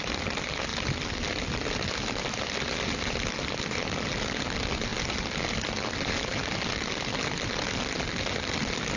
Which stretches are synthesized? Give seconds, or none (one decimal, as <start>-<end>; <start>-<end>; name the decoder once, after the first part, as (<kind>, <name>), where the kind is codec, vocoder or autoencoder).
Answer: none